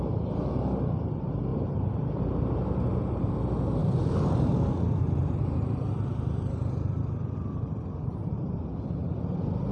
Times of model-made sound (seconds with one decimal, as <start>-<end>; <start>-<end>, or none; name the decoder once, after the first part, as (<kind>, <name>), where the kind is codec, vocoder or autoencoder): 1.5-3.3 (vocoder, BigVGAN v2); 3.8-4.5; 5.2-7.0